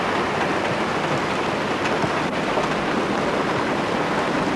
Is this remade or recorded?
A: recorded